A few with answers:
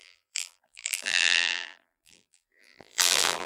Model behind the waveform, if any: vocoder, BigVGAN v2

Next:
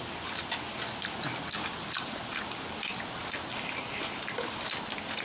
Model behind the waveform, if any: none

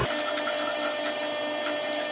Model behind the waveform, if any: none